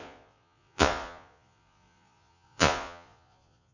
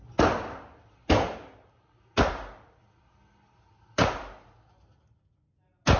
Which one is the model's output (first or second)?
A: first